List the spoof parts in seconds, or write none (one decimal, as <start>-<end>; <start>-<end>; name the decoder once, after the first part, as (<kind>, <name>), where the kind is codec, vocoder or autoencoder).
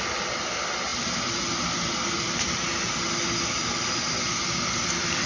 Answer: none